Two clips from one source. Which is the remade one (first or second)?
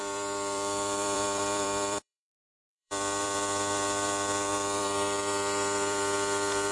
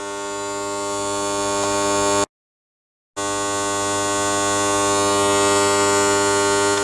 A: first